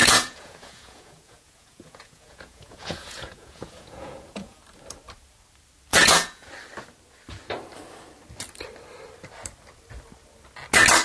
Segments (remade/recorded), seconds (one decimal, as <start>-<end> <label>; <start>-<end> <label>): 0.0-4.6 remade; 4.6-5.9 recorded; 5.9-6.5 remade; 6.5-11.0 recorded

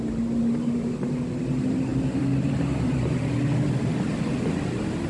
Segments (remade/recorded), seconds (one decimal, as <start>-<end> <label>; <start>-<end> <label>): 0.0-5.1 recorded

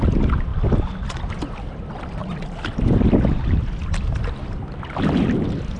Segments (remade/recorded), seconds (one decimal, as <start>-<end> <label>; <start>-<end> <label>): 0.0-5.8 recorded

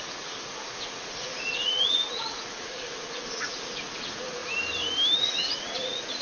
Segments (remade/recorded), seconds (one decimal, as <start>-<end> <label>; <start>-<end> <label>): 0.0-4.4 remade; 4.4-5.2 recorded; 5.2-6.2 remade

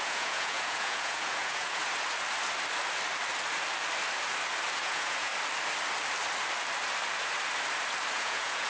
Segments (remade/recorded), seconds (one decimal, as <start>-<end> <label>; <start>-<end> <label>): 0.0-1.8 remade; 1.8-4.8 recorded; 4.8-5.3 remade; 5.3-8.1 recorded; 8.1-8.7 remade

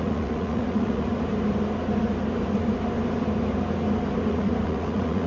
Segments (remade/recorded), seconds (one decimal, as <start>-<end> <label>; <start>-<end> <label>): 0.0-1.1 remade; 1.1-4.3 recorded; 4.3-5.3 remade

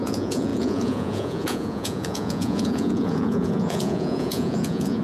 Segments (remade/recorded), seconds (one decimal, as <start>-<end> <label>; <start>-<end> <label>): 0.0-5.0 remade

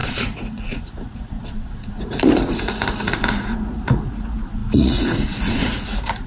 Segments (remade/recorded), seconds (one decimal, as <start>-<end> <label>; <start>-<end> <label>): 0.0-6.3 remade